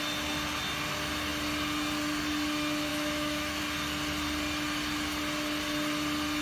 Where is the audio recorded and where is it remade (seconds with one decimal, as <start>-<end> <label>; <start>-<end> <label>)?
0.0-2.9 recorded; 2.9-3.6 remade; 3.6-6.4 recorded